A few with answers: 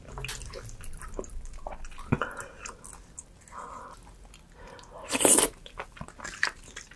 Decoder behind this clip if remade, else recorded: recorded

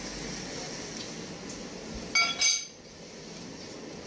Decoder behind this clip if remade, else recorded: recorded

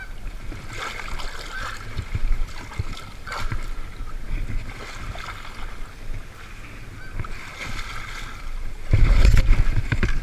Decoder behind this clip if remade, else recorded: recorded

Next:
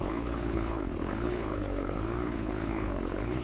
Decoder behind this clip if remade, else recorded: remade, codec, HILCodec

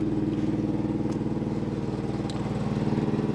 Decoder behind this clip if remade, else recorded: recorded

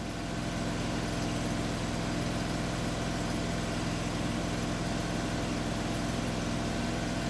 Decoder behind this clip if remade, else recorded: recorded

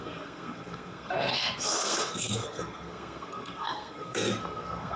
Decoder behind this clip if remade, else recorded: remade, codec, SNAC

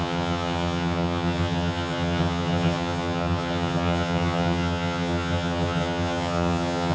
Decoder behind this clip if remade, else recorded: remade, vocoder, HiFi-GAN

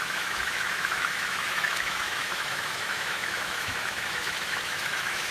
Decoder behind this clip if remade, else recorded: remade, autoencoder, DAC-VAE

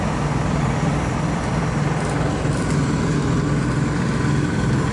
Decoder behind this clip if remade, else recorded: recorded